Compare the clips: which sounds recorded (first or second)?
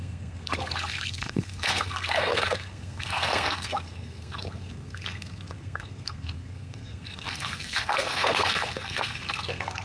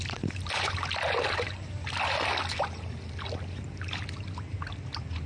second